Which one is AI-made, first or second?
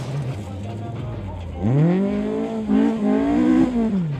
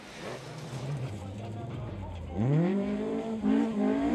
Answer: second